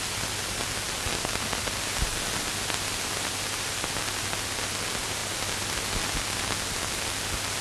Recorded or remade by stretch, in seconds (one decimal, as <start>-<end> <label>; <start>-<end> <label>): 0.0-7.6 recorded